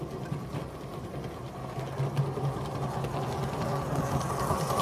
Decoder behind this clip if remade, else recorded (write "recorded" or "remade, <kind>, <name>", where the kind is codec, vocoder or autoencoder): recorded